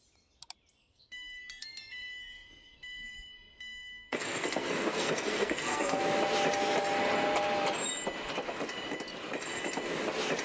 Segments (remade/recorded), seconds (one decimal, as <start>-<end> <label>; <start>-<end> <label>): 0.0-0.8 recorded; 0.8-6.0 remade; 6.0-10.4 recorded